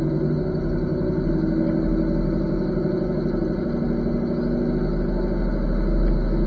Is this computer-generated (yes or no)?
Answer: no